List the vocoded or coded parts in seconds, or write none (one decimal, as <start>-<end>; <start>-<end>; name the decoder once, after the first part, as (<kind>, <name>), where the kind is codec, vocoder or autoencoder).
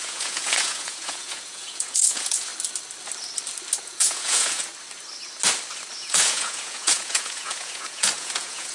0.0-2.5 (vocoder, Vocos); 3.8-4.7; 6.0-8.7